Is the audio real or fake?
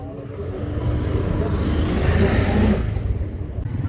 real